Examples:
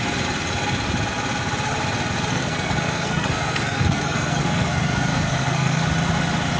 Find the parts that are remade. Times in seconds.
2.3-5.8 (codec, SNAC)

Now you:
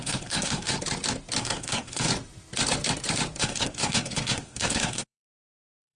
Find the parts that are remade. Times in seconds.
0.0-0.7 (codec, SNAC); 1.4-2.1; 3.4-6.0